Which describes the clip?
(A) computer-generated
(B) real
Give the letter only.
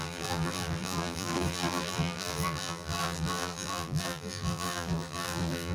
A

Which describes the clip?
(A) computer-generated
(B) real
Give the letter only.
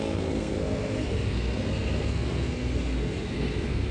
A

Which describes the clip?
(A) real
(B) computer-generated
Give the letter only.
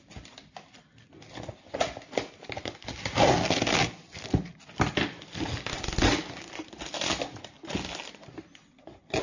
A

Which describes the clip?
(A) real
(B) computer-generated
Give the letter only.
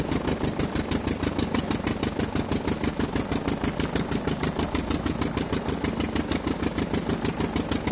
A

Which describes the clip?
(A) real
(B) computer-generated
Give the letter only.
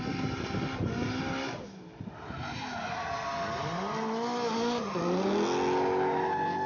A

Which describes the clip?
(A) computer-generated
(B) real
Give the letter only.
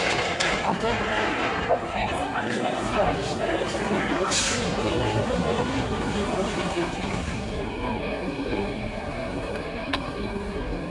A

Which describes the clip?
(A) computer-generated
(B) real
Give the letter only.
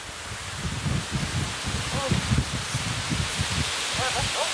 B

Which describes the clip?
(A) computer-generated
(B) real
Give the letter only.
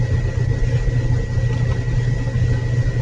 B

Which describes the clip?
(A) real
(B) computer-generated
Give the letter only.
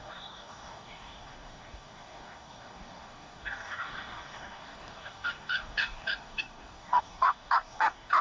B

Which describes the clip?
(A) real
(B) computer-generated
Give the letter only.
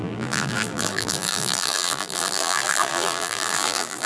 B